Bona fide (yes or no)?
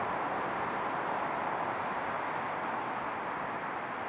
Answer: yes